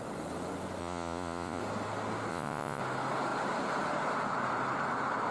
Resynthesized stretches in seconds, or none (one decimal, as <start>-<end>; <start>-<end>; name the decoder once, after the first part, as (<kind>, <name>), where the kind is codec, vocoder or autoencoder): 0.8-1.6 (vocoder, Vocos); 2.3-2.8